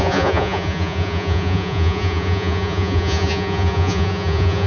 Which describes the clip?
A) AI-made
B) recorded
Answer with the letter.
A